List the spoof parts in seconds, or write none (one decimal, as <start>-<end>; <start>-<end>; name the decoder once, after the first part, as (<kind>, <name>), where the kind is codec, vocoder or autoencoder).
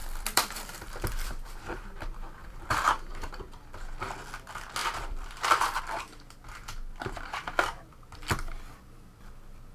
0.0-1.6 (vocoder, BigVGAN v2); 2.4-3.1; 4.8-5.8